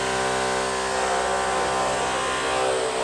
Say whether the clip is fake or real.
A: real